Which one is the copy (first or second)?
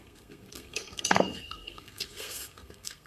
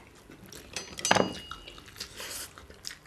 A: first